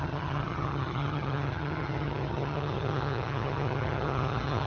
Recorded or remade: remade